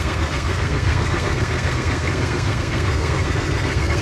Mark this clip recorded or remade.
remade